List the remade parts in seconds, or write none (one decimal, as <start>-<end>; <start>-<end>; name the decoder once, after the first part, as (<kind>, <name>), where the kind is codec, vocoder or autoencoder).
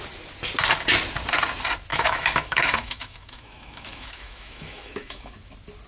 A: 1.9-5.3 (autoencoder, DAC-VAE)